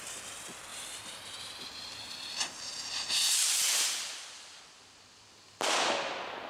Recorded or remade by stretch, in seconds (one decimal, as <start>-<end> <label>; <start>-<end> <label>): 0.0-0.7 recorded; 0.7-4.6 remade; 4.6-6.5 recorded